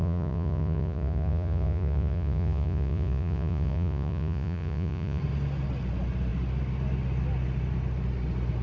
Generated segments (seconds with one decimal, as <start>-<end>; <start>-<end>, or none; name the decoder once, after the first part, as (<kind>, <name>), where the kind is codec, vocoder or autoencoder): 0.0-5.2 (vocoder, Vocos)